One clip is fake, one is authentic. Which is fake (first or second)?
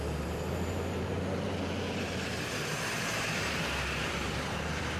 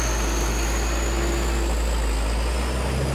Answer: first